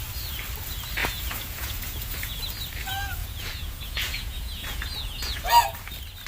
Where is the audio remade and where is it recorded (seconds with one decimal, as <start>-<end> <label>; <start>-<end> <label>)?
0.0-1.0 recorded; 1.0-2.4 remade; 2.4-3.2 recorded; 3.2-5.5 remade; 5.5-6.3 recorded